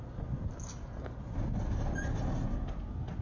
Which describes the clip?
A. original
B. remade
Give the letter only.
A